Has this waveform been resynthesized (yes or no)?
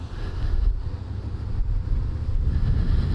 no